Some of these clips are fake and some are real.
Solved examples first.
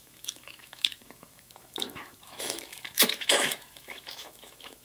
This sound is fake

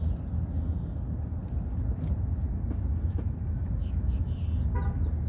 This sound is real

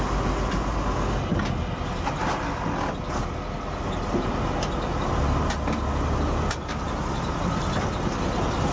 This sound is real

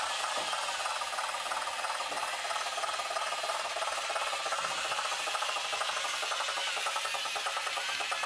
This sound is real